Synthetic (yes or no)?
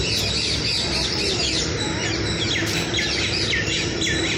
no